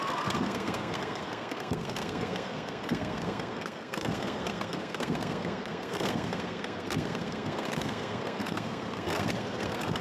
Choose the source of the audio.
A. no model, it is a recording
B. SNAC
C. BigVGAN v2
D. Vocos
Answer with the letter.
B